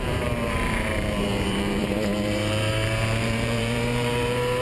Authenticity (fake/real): fake